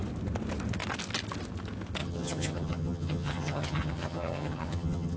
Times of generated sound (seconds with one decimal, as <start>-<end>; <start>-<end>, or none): 2.0-5.2